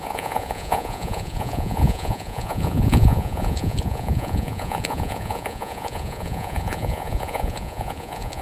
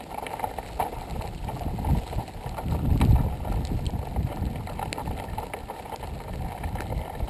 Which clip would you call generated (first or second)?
first